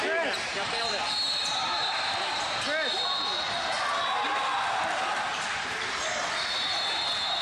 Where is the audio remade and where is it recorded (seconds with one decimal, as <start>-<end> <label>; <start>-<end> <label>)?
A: 0.0-0.5 recorded; 0.5-2.1 remade; 2.1-5.3 recorded; 5.3-5.8 remade; 5.8-7.4 recorded

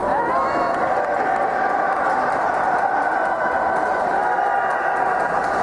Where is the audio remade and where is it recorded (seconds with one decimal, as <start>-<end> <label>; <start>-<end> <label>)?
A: 0.0-5.6 recorded

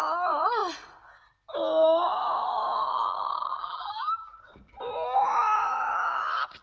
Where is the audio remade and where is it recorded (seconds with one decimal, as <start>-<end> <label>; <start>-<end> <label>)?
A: 0.0-3.5 recorded; 3.5-4.4 remade; 4.4-6.6 recorded

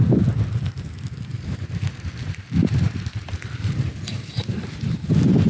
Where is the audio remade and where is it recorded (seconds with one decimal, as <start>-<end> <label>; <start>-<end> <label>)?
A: 0.0-1.3 recorded; 1.3-4.6 remade; 4.6-5.5 recorded